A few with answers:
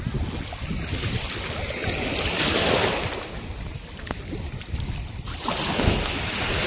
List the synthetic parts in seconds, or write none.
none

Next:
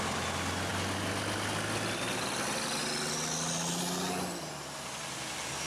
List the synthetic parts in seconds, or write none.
none

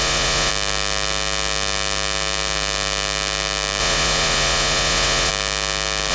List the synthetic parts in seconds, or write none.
0.0-0.5 (vocoder, Vocos); 3.8-5.3

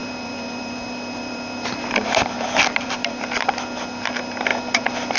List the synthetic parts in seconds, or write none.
0.0-3.1 (vocoder, BigVGAN v2)

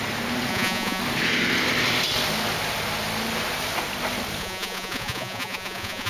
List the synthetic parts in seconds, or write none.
0.5-1.0 (vocoder, Vocos); 4.4-6.1

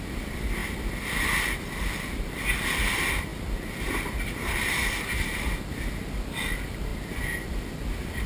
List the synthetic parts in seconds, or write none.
none

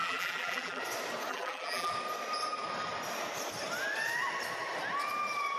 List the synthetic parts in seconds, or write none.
0.0-0.8 (vocoder, BigVGAN v2); 1.3-1.9